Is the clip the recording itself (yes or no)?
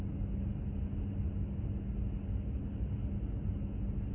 yes